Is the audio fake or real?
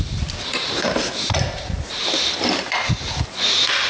fake